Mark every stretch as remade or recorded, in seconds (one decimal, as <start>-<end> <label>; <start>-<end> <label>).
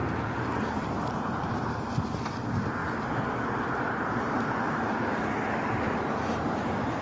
0.0-1.9 remade; 1.9-7.0 recorded